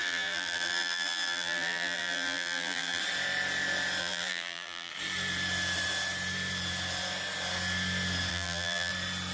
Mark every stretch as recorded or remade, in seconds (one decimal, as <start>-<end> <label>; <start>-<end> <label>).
0.0-3.0 remade; 3.0-4.0 recorded; 4.0-4.9 remade; 4.9-8.3 recorded; 8.3-8.9 remade; 8.9-9.3 recorded